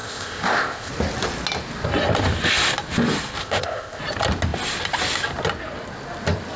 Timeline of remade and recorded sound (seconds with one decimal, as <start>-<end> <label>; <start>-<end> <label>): 0.0-0.9 remade; 0.9-3.4 recorded; 3.4-4.0 remade; 4.0-6.6 recorded